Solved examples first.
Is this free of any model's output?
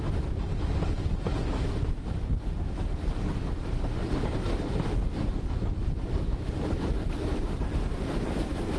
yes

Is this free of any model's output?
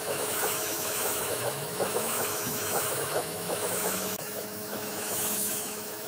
no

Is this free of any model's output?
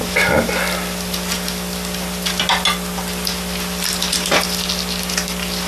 yes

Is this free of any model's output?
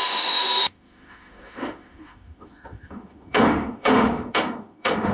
no